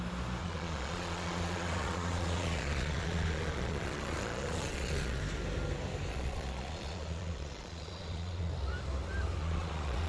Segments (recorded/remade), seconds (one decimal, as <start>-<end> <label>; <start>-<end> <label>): 0.0-0.4 recorded; 0.4-5.2 remade; 5.2-6.1 recorded; 6.1-8.5 remade; 8.5-9.4 recorded; 9.4-10.1 remade